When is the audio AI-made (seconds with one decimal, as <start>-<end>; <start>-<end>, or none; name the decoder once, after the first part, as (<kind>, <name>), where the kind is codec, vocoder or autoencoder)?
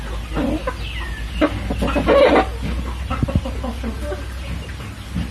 none